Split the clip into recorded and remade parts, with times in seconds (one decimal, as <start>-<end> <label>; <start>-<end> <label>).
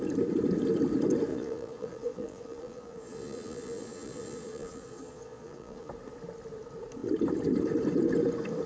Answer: 0.0-1.3 recorded; 1.3-5.9 remade; 5.9-8.7 recorded